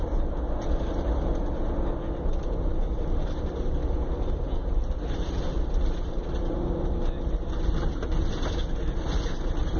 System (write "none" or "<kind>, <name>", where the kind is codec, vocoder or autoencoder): none